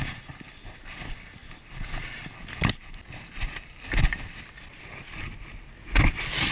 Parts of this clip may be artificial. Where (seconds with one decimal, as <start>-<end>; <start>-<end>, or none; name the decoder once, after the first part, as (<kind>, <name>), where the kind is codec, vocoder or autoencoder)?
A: none

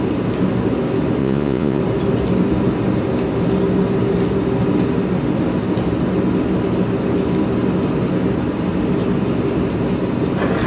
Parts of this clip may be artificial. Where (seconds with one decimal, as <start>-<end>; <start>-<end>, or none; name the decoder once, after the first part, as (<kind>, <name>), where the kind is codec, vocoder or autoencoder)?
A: 1.2-1.8 (vocoder, Vocos)

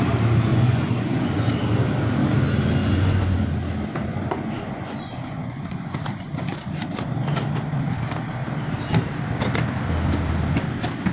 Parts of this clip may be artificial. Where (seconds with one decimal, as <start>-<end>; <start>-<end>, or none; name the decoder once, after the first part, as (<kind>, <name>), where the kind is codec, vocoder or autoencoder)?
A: 0.5-1.5 (vocoder, Vocos); 2.8-3.4; 4.1-6.3

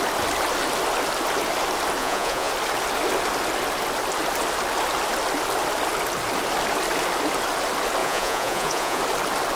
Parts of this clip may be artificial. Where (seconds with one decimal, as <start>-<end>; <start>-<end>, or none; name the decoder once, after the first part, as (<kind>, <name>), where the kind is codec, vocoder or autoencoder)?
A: 2.0-2.5 (vocoder, Vocos); 8.0-9.0

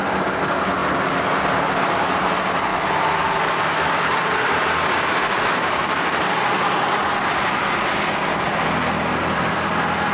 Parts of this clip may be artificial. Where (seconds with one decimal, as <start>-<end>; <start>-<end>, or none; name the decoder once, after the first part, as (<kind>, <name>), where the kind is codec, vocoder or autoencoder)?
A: none

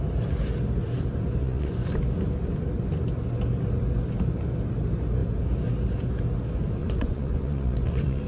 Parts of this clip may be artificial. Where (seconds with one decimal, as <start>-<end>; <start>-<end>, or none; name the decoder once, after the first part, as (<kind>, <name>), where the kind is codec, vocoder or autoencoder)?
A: 1.4-2.0 (vocoder, Vocos); 6.8-8.3